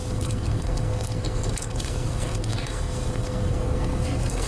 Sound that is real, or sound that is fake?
fake